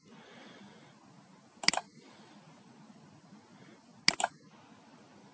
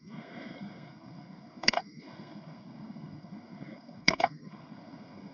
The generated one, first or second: second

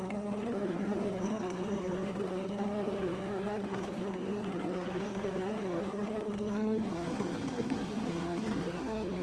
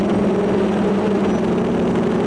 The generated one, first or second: first